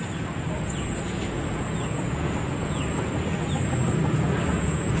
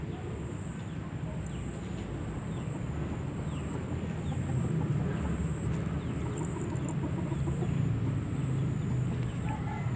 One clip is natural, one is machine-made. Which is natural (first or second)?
second